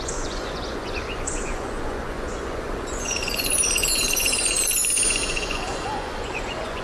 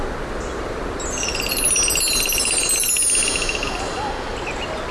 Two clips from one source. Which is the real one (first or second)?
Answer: second